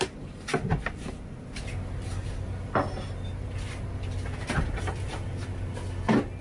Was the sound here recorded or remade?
recorded